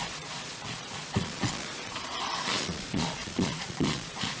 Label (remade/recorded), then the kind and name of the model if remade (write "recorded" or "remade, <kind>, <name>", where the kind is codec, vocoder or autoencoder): remade, vocoder, Vocos